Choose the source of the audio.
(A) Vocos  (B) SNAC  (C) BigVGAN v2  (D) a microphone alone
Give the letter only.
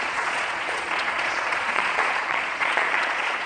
A